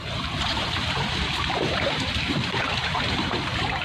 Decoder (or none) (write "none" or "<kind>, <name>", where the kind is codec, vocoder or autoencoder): vocoder, BigVGAN v2